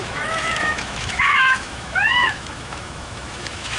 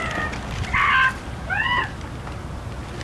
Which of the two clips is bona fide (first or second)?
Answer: second